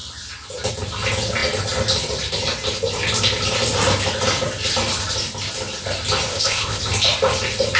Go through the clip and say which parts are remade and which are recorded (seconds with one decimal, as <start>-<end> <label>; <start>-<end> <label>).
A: 0.0-6.3 recorded; 6.3-6.8 remade; 6.8-7.8 recorded